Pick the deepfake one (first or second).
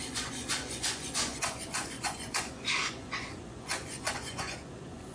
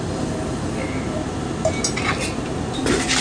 first